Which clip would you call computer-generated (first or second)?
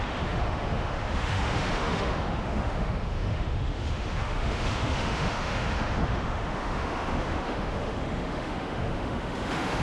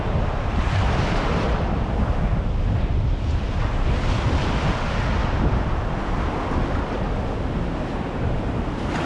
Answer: first